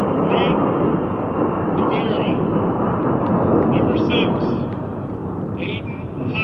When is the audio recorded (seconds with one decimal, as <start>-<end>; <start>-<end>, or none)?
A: 0.4-1.5; 5.2-5.8